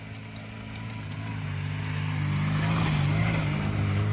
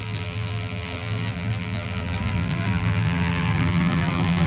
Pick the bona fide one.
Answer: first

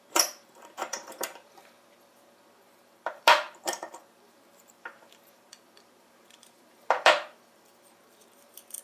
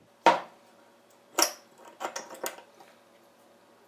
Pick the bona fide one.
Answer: second